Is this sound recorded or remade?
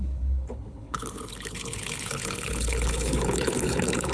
remade